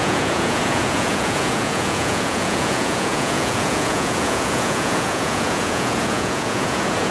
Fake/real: fake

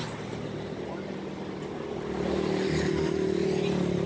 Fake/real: real